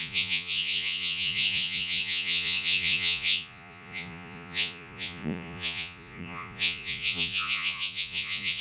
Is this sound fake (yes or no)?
yes